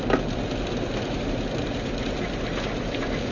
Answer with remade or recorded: recorded